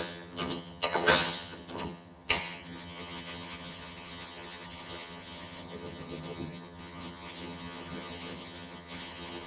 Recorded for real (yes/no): no